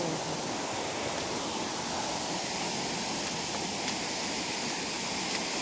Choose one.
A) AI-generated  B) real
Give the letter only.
B